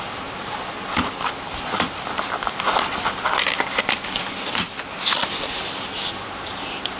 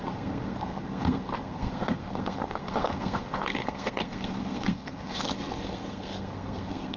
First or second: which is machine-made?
second